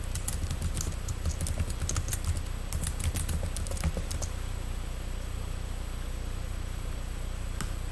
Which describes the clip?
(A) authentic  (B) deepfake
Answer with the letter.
A